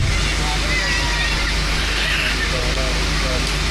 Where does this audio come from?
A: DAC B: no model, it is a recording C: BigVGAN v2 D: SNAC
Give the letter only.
B